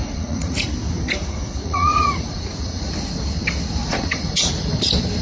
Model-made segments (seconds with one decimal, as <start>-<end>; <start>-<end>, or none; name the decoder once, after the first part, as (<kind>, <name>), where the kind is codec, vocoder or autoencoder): 0.0-0.7 (vocoder, Vocos); 1.2-2.9; 3.8-4.5